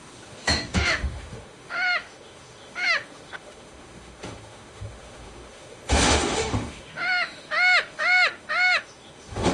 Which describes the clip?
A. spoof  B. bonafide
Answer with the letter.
A